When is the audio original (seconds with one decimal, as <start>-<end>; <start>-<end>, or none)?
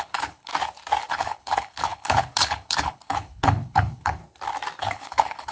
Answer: 0.5-1.1; 4.2-4.8